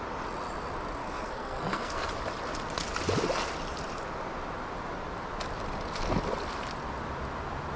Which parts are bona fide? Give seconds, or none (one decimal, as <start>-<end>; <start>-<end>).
0.0-1.0; 2.1-7.8

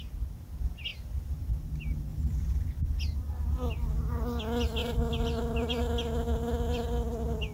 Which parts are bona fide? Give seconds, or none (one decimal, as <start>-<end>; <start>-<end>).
0.0-2.1; 2.8-4.8; 5.8-7.5

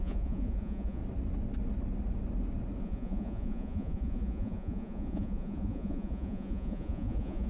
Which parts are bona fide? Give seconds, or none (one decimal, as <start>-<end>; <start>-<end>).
1.0-2.8

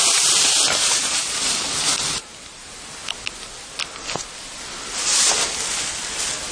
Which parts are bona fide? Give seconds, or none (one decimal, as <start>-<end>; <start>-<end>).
0.0-6.5

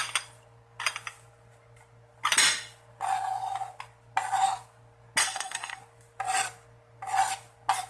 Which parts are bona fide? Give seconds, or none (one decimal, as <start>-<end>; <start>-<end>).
0.0-5.2; 5.8-7.9